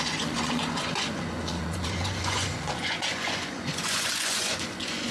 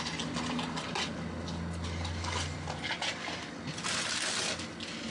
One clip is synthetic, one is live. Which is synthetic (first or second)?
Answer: first